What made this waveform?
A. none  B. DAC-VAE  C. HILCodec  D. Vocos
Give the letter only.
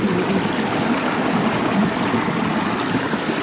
A